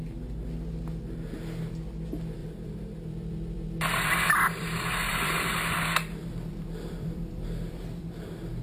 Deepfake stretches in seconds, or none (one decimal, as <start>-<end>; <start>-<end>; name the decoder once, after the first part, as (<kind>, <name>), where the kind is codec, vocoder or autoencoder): 2.4-5.5 (vocoder, BigVGAN v2); 6.2-8.0